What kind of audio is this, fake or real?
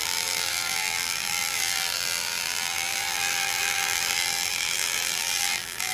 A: fake